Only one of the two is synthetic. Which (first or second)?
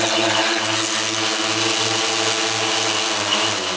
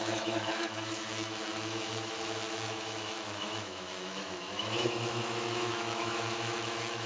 second